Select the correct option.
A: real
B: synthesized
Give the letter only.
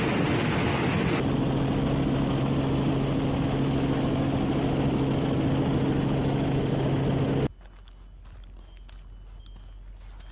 A